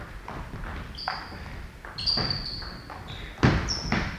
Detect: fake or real real